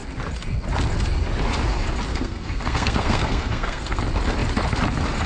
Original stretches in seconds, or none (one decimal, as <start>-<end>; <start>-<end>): 0.0-2.1; 4.0-5.3